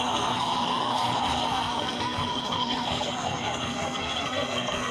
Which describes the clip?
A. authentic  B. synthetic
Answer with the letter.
B